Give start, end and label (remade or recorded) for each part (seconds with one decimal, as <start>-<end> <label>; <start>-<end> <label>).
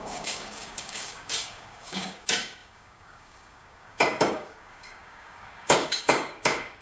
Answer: 0.0-6.8 remade